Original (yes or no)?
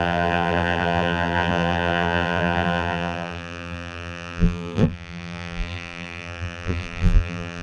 no